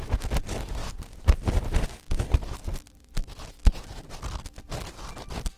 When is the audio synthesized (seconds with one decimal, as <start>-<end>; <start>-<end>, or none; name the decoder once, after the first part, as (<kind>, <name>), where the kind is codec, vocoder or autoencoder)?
0.8-1.5 (vocoder, BigVGAN v2)